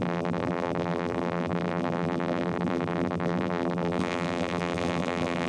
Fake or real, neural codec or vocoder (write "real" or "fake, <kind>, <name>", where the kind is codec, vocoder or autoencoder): fake, vocoder, BigVGAN v2